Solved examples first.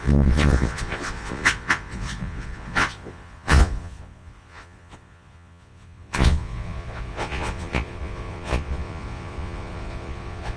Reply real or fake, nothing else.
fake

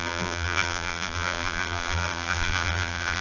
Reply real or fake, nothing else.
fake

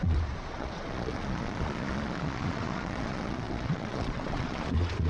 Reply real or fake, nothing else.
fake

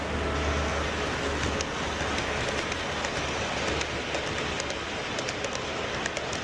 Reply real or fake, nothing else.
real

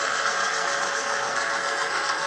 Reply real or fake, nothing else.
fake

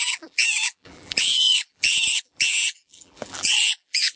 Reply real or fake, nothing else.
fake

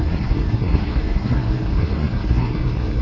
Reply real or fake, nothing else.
fake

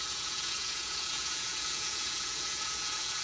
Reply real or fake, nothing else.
fake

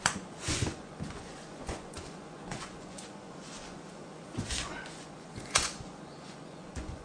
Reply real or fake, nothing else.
fake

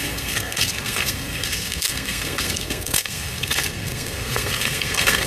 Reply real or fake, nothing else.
fake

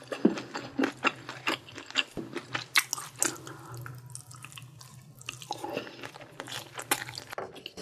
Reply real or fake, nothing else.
real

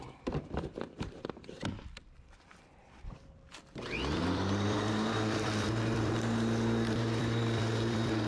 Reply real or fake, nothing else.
fake